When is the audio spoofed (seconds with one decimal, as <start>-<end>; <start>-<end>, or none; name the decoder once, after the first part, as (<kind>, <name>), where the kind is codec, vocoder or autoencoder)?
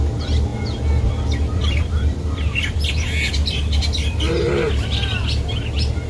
none